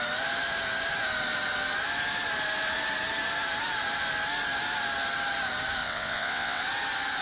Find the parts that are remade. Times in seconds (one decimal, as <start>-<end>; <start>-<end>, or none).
5.8-6.6